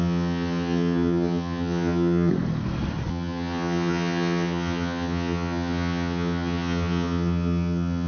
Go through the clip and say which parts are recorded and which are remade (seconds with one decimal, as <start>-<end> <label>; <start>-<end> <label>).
0.0-2.3 remade; 2.3-3.1 recorded; 3.1-8.1 remade